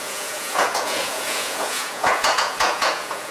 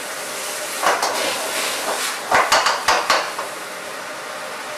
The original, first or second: second